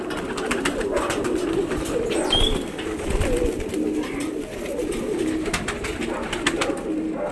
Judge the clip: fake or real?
real